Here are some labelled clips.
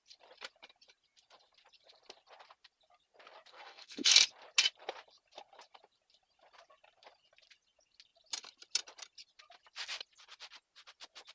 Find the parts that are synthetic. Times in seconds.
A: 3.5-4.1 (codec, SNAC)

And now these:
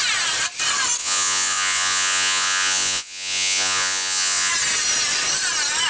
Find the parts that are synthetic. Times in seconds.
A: 1.0-4.5 (vocoder, Vocos)

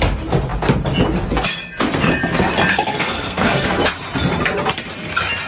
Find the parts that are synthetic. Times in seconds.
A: 2.7-3.8 (codec, SNAC)

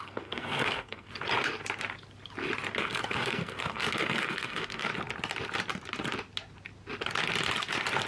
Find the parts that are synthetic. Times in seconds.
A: 0.0-1.1 (codec, SNAC); 2.8-4.9